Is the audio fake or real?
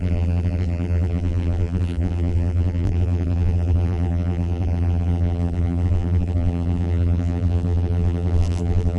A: fake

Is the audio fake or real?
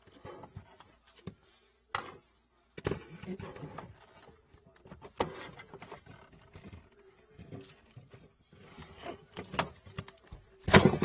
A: real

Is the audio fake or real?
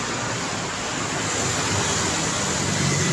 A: real